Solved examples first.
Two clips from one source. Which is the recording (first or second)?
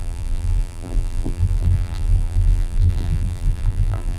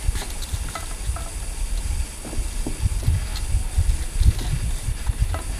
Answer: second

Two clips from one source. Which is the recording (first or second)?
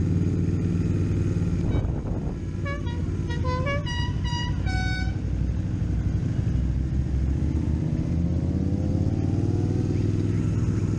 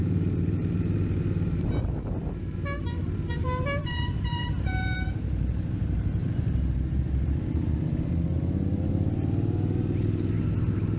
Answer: first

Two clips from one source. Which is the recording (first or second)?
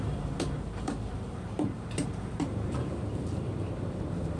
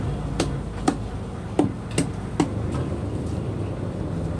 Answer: second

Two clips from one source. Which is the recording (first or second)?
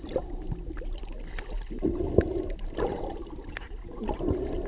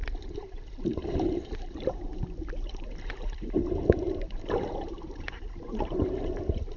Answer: first